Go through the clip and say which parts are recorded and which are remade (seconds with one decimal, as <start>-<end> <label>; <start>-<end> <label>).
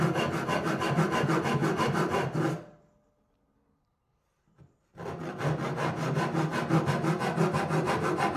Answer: 0.0-8.4 recorded